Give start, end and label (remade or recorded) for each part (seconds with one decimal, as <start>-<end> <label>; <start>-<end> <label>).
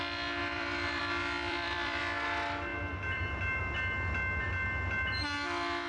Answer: 0.0-0.4 recorded; 0.4-1.0 remade; 1.0-1.5 recorded; 1.5-2.0 remade; 2.0-2.7 recorded; 2.7-3.6 remade; 3.6-5.9 recorded